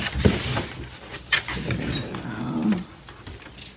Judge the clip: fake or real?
fake